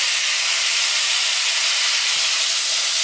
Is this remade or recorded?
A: recorded